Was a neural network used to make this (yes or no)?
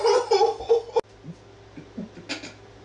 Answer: no